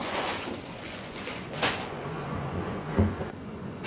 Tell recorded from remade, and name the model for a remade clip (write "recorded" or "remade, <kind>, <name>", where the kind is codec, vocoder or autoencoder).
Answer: remade, vocoder, Vocos